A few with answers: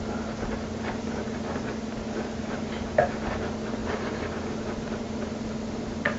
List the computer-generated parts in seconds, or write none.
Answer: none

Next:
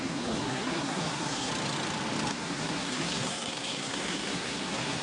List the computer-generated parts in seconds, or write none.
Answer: 0.0-1.5; 2.3-5.0

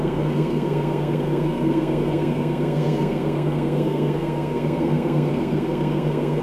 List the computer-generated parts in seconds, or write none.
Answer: 0.0-6.4